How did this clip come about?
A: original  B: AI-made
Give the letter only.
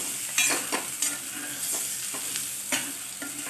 A